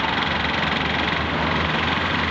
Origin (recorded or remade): recorded